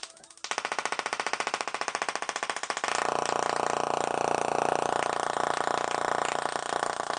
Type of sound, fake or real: real